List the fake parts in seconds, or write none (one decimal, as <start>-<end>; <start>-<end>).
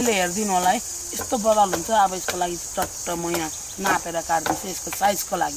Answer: none